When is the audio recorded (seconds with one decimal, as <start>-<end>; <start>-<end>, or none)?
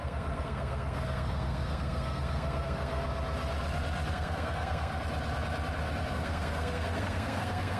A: 3.0-4.1; 4.9-6.1